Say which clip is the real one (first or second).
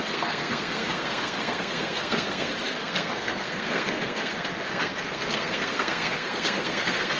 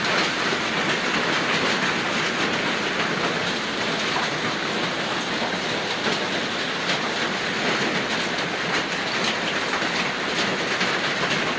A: second